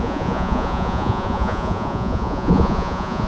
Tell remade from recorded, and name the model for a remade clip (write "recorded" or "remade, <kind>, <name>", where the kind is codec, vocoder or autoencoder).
remade, vocoder, Vocos